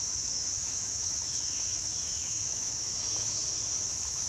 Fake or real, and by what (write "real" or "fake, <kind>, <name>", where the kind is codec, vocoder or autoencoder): fake, autoencoder, DAC-VAE